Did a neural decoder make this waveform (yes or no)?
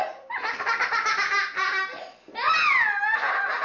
no